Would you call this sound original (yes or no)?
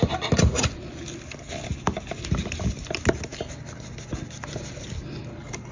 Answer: yes